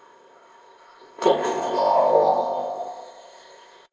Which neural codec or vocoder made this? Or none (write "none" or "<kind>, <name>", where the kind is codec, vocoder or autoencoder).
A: codec, ZipCodec